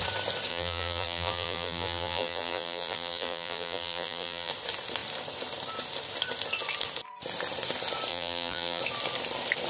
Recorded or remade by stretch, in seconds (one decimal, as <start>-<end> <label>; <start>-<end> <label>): 0.0-0.5 recorded; 0.5-4.5 remade; 4.5-8.1 recorded; 8.1-8.8 remade; 8.8-9.7 recorded